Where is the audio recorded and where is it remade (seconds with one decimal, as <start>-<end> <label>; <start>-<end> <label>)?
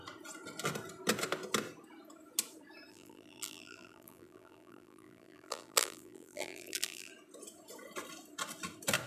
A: 0.0-2.9 recorded; 2.9-7.1 remade; 7.1-9.1 recorded